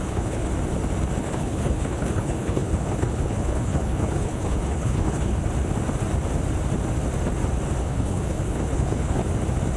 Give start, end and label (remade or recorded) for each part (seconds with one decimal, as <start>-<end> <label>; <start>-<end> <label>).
0.0-0.5 remade; 0.5-1.2 recorded; 1.2-5.4 remade; 5.4-7.8 recorded; 7.8-9.2 remade; 9.2-9.8 recorded

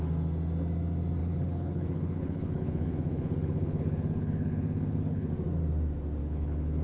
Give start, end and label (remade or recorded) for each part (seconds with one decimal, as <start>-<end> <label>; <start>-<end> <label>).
0.0-1.2 recorded; 1.2-5.3 remade; 5.3-6.2 recorded; 6.2-6.8 remade

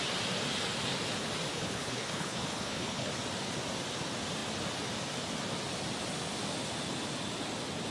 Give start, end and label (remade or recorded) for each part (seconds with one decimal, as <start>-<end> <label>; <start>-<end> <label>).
0.0-1.5 recorded; 1.5-3.1 remade; 3.1-7.9 recorded

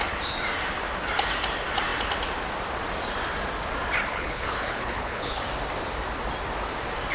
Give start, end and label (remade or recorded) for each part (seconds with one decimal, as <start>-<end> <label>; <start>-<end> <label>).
0.0-4.1 recorded; 4.1-5.4 remade; 5.4-7.1 recorded

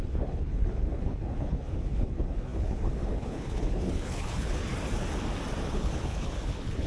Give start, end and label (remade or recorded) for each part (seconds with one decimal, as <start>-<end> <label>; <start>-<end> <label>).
0.0-4.7 remade; 4.7-5.7 recorded; 5.7-6.9 remade

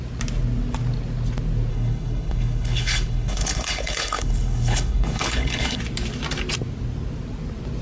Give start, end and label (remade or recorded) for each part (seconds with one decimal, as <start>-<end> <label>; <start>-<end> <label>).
0.0-1.7 recorded; 1.7-5.8 remade; 5.8-7.8 recorded

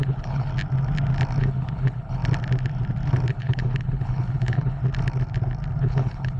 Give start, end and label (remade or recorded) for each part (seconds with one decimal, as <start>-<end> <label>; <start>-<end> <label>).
0.0-0.5 remade; 0.5-1.4 recorded; 1.4-2.2 remade; 2.2-3.3 recorded; 3.3-4.8 remade; 4.8-5.8 recorded; 5.8-6.4 remade